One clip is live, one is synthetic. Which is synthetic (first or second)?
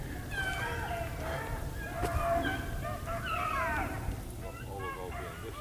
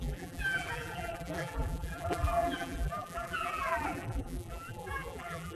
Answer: second